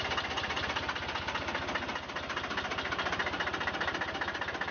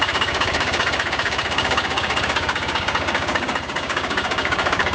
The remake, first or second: second